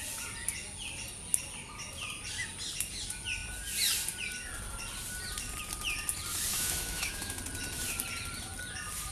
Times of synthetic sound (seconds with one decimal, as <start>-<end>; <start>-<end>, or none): 6.5-7.4